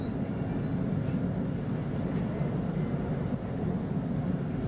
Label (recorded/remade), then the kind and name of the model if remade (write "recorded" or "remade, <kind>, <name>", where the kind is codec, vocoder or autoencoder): recorded